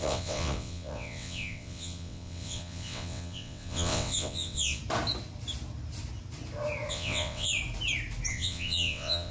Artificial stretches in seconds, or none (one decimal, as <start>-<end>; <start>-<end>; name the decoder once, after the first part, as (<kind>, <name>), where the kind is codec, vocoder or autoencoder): 0.0-4.8 (vocoder, WaveNeXt); 6.9-7.5; 8.3-9.3